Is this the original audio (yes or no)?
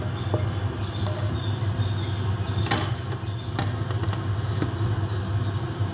yes